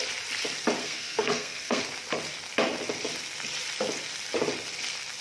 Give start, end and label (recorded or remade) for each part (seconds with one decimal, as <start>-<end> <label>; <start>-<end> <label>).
0.0-0.8 recorded; 0.8-1.8 remade; 1.8-5.2 recorded